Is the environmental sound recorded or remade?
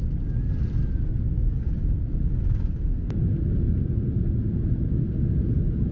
recorded